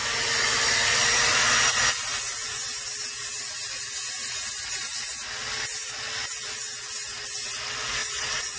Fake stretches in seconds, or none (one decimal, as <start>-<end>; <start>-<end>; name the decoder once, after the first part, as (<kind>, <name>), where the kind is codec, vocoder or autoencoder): 8.0-8.6 (vocoder, Vocos)